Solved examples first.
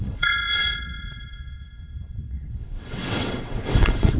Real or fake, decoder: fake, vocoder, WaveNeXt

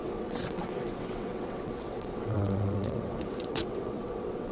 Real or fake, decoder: fake, vocoder, WaveNeXt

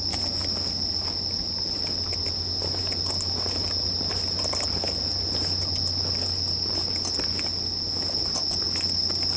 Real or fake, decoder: real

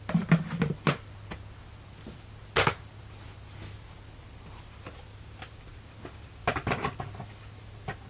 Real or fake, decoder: real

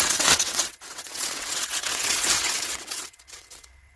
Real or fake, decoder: fake, vocoder, WaveNeXt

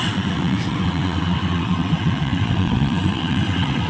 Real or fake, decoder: fake, vocoder, WaveNeXt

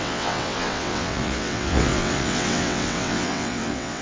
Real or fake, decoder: fake, vocoder, WaveNeXt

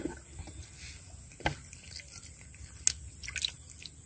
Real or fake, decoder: real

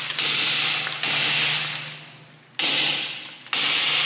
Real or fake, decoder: real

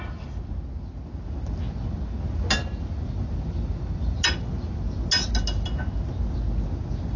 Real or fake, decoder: real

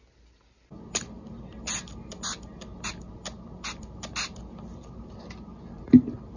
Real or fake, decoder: real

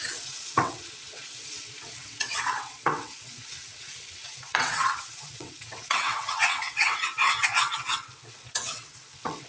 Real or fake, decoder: fake, vocoder, WaveNeXt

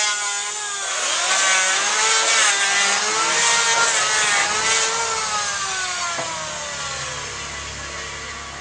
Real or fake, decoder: real